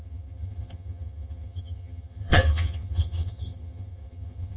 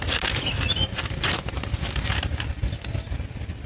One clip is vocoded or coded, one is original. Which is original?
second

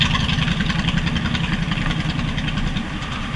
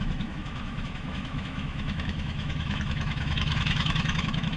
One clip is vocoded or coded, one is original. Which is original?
first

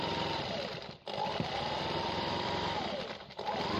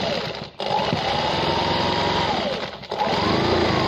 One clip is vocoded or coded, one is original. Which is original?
second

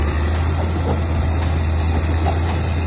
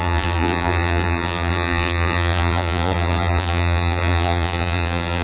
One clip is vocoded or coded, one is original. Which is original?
first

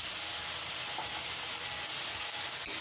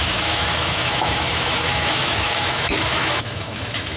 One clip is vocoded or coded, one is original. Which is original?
first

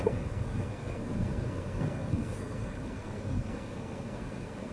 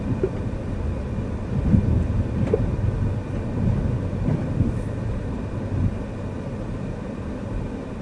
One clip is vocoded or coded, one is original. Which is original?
second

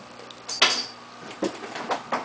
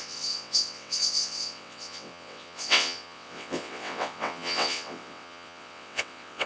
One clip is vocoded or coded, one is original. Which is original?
first